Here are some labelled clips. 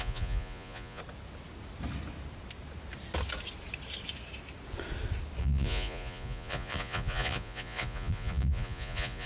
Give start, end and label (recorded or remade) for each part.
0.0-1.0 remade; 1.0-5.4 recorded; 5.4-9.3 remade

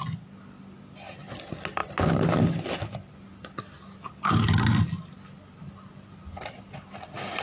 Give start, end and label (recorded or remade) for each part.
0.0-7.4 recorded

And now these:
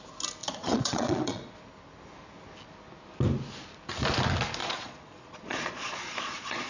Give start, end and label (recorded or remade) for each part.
0.0-0.4 recorded; 0.4-1.6 remade; 1.6-4.6 recorded; 4.6-6.7 remade

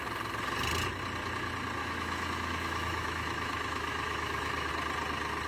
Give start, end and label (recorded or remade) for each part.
0.0-1.8 recorded; 1.8-4.7 remade; 4.7-5.5 recorded

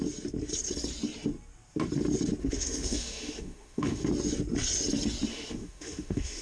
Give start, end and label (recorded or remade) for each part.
0.0-2.4 recorded; 2.4-4.1 remade; 4.1-5.3 recorded; 5.3-6.4 remade